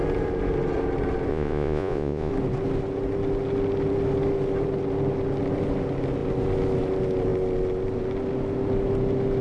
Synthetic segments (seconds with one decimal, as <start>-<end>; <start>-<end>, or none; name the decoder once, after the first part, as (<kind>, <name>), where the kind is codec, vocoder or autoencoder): 1.3-2.3 (vocoder, Vocos)